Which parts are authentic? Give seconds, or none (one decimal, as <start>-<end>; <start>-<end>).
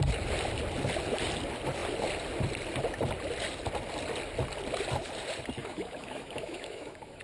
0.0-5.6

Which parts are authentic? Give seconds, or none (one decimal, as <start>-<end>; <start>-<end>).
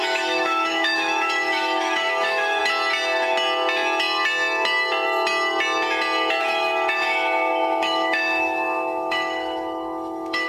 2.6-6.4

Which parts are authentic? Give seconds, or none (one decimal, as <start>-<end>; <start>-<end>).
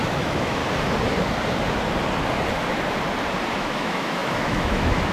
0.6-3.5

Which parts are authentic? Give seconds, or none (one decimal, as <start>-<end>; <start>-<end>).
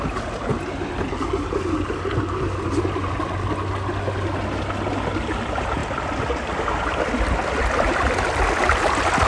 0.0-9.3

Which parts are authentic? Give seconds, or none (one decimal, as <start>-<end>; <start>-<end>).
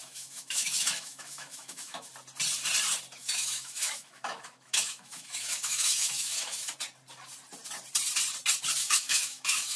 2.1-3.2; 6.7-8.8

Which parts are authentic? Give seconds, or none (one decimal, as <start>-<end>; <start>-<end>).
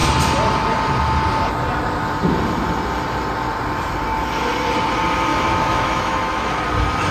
0.0-5.3; 6.6-7.1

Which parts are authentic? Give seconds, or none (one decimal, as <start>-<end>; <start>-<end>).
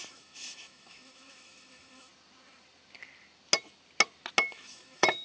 2.1-4.5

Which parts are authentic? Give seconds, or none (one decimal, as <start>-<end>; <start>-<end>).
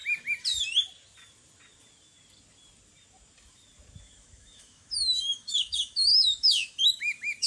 0.0-4.0